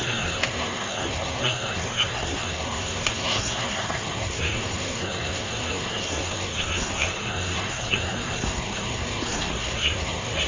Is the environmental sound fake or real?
fake